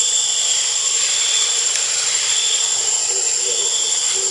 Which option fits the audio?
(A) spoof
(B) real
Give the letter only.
B